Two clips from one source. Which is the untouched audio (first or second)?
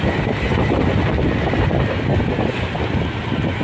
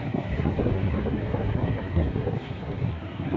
first